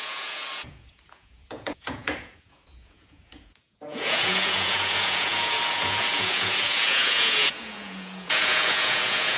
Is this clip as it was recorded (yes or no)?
no